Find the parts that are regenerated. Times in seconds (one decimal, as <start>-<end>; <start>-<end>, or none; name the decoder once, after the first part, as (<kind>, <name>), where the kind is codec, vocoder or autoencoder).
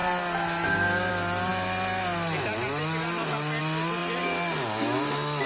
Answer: none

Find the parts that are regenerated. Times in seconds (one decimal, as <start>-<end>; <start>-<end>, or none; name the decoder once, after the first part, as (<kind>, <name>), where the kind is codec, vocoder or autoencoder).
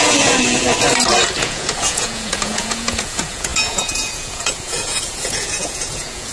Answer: 0.0-0.7 (vocoder, Vocos); 1.4-6.3